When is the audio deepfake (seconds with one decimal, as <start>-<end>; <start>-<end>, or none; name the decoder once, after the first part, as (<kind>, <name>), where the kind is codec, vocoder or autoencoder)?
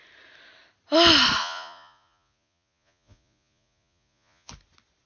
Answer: 1.4-4.5 (vocoder, Vocos)